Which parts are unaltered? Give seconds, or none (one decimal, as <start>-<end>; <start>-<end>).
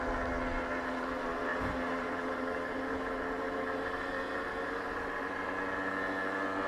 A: 0.0-1.5; 5.5-6.7